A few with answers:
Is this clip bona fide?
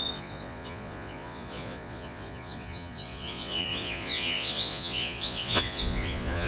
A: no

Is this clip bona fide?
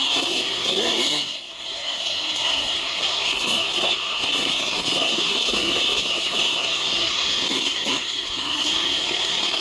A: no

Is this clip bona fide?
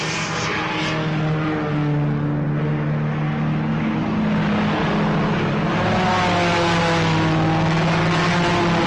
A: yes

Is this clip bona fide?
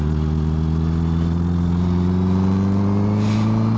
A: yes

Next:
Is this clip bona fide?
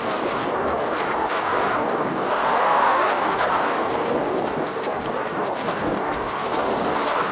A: no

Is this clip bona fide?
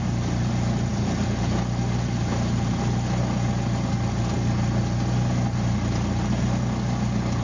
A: yes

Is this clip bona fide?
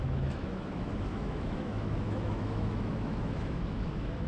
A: no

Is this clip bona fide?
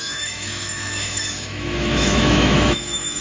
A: no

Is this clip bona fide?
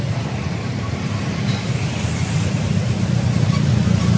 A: yes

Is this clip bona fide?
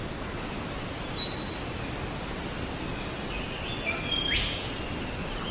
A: yes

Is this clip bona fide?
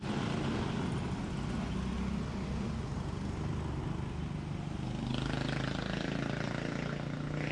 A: yes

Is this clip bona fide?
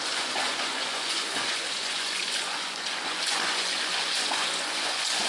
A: no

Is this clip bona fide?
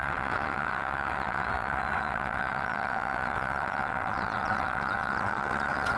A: no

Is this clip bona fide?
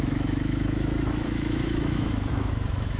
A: no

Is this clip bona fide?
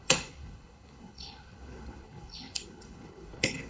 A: no